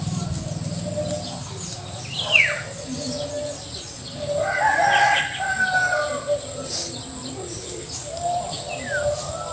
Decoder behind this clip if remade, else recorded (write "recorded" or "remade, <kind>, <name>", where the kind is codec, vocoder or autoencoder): recorded